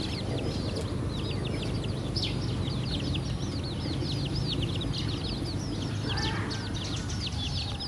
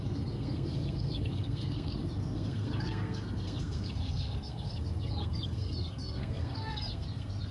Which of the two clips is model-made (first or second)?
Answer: second